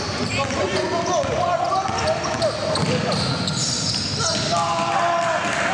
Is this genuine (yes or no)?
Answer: yes